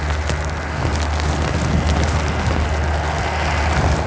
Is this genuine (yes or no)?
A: yes